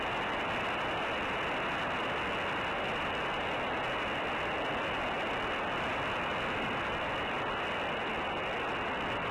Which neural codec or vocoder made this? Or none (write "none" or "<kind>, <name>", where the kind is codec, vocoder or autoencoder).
none